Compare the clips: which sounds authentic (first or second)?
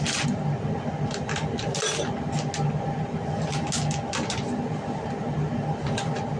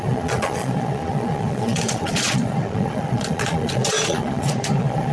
first